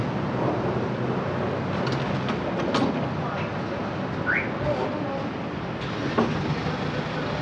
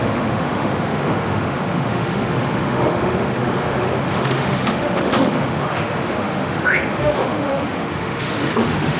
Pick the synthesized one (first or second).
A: second